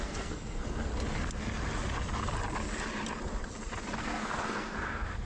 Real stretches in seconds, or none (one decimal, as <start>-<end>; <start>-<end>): 0.9-4.0